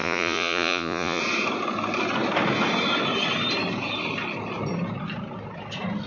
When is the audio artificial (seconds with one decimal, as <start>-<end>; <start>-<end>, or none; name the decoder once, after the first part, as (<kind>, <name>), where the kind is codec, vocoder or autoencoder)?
0.0-1.2 (vocoder, Vocos)